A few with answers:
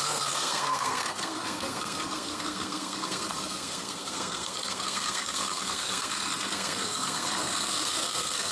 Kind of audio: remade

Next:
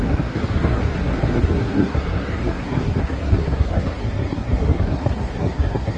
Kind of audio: remade